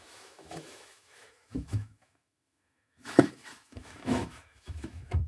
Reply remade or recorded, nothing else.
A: remade